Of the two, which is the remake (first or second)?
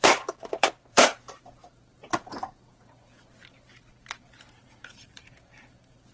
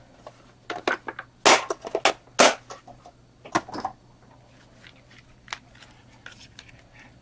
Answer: first